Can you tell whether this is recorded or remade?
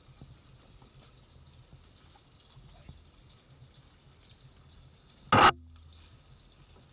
recorded